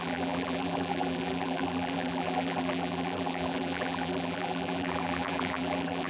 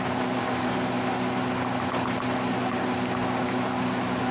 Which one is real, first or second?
second